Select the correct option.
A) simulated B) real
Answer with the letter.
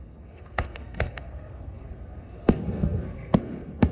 A